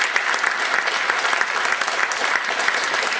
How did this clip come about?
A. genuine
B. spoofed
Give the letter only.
A